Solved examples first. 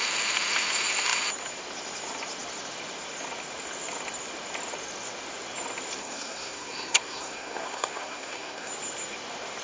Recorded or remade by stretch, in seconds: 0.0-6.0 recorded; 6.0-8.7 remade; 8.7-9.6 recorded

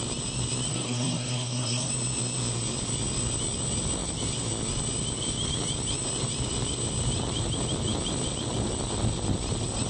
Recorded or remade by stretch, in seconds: 0.0-0.7 recorded; 0.7-1.9 remade; 1.9-9.9 recorded